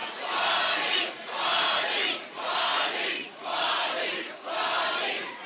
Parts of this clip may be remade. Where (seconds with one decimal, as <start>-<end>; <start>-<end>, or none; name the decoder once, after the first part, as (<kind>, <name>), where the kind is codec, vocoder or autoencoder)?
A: 0.0-5.5 (vocoder, Vocos)